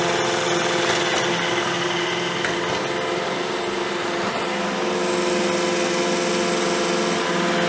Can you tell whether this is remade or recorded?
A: recorded